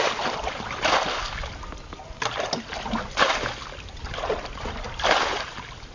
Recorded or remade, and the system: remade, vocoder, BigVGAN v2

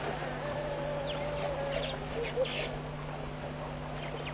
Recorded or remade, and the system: recorded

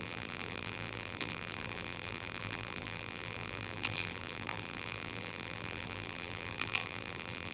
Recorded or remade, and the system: remade, vocoder, BigVGAN v2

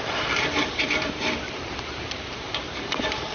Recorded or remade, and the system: remade, vocoder, BigVGAN v2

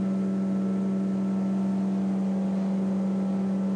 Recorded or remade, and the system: recorded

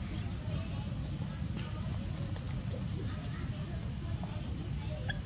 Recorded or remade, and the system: recorded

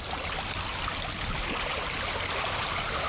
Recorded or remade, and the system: recorded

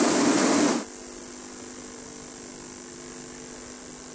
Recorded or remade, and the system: recorded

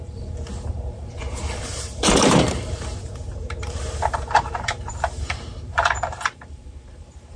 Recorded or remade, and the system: remade, vocoder, BigVGAN v2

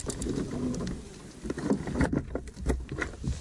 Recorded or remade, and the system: recorded